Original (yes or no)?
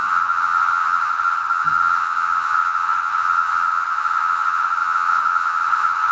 no